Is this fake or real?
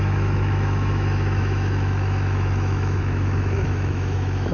fake